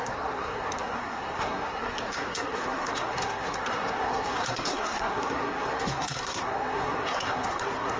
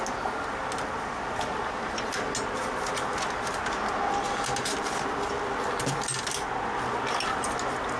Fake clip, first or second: first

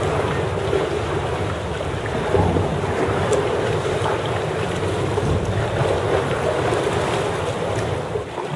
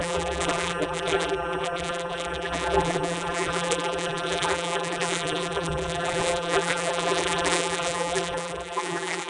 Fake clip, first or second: second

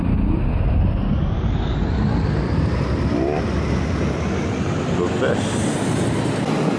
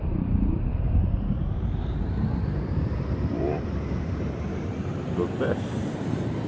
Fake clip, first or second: second